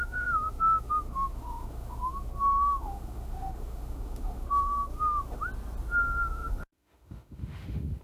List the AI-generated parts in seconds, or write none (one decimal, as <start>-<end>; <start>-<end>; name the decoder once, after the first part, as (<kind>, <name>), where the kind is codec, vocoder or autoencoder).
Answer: 0.0-5.4 (autoencoder, DAC-VAE); 6.3-8.0